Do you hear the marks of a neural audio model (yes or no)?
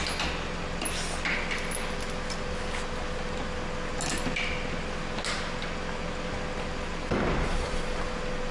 no